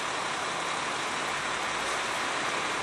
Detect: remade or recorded recorded